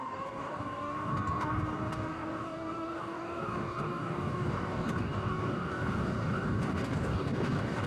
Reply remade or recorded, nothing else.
remade